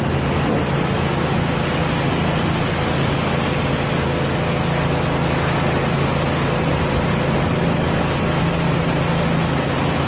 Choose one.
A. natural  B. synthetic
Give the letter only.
A